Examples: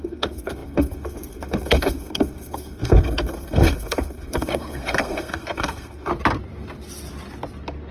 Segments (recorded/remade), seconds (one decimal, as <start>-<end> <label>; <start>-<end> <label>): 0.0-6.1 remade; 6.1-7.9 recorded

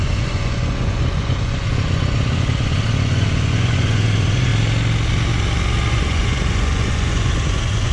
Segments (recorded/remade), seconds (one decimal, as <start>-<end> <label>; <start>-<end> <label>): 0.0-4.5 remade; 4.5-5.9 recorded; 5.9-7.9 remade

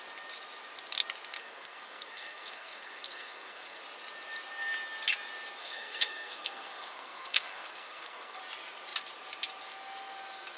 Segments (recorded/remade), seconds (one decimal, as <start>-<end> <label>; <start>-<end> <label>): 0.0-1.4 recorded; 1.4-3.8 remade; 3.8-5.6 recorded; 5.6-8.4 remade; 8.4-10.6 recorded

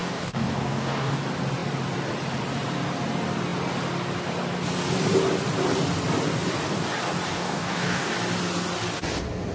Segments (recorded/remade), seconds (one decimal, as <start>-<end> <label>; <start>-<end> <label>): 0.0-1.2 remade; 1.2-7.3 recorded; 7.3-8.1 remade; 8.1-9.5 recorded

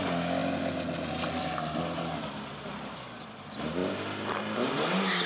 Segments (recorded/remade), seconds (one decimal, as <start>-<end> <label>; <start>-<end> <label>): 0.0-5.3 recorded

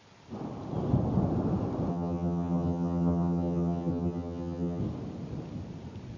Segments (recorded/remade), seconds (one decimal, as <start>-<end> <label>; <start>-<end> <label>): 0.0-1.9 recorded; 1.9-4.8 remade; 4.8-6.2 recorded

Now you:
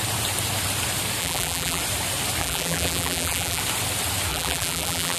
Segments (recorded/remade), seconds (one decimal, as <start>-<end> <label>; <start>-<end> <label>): 0.0-1.2 recorded; 1.2-1.8 remade; 1.8-2.4 recorded; 2.4-3.6 remade; 3.6-4.3 recorded; 4.3-5.2 remade